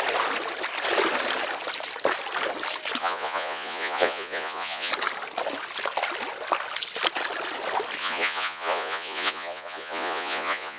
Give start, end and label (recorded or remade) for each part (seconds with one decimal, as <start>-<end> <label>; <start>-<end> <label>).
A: 0.0-3.0 recorded; 3.0-4.9 remade; 4.9-8.0 recorded; 8.0-10.8 remade